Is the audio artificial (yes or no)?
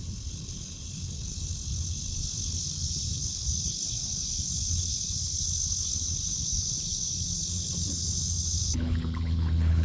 yes